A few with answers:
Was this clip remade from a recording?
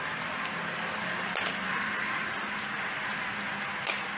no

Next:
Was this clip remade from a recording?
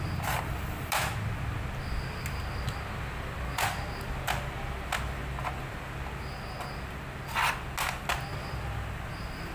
no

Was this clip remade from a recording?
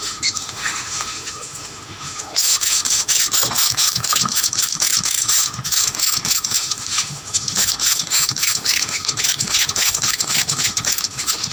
yes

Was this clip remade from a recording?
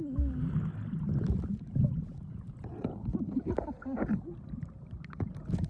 no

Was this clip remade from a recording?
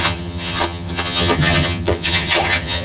yes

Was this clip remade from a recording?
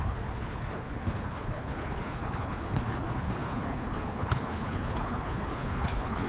yes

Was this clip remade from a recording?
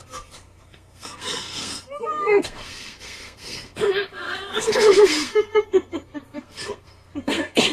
yes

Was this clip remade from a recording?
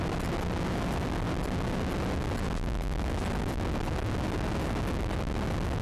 no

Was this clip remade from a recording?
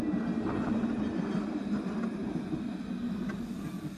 no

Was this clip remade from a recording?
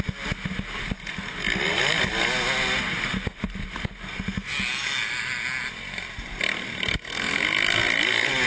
no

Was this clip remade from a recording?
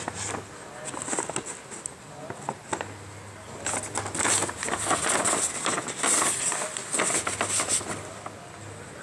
no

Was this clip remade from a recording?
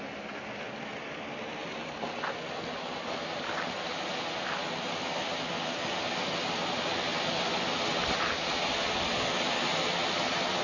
no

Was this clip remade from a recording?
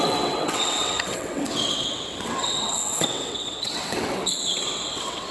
yes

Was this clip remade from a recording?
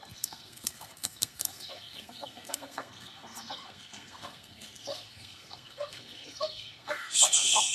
yes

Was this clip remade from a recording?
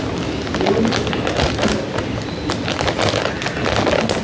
no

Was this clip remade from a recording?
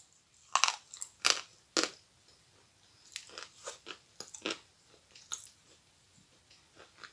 no